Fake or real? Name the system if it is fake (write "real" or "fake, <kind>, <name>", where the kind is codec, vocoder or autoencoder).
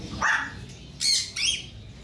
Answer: real